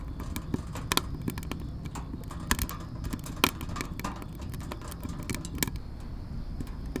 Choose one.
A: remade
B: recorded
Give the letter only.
B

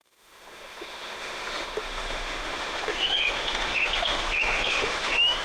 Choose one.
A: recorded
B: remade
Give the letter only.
B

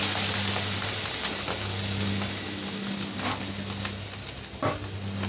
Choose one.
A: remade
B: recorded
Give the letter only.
B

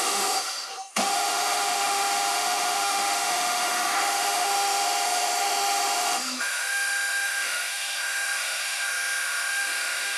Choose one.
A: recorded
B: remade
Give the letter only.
B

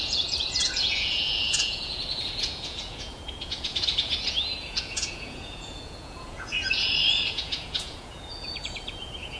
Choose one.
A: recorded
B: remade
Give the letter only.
B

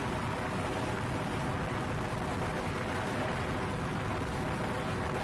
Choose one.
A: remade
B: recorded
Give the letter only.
B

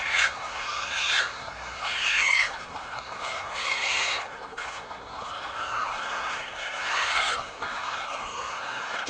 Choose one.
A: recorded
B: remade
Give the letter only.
B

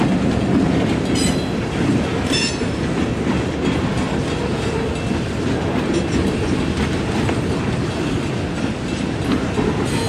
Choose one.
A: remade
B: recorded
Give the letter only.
B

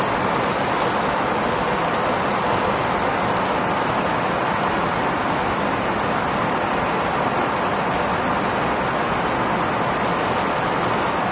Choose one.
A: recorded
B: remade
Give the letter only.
A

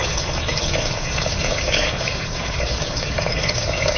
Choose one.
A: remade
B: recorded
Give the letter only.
A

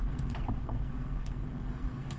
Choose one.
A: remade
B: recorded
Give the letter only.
A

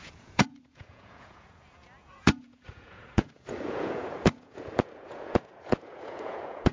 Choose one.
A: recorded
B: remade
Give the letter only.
B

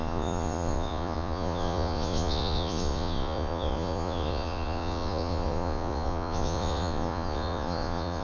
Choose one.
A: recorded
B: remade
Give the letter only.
B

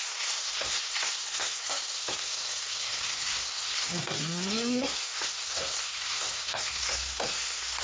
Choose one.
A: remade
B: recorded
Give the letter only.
A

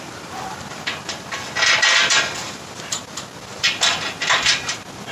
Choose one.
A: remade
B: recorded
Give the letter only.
B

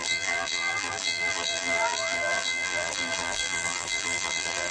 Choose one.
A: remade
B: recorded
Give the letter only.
A